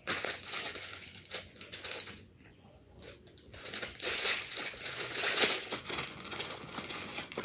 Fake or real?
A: fake